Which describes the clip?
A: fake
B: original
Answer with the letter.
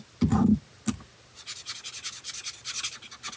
B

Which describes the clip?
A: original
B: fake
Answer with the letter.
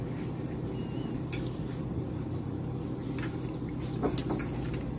A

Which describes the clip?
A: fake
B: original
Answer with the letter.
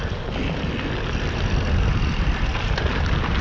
B